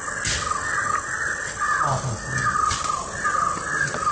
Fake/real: real